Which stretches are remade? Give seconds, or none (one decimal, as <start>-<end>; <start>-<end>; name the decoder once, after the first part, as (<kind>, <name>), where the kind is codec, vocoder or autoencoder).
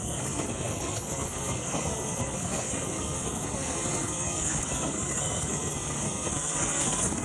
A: 0.0-7.2 (codec, SNAC)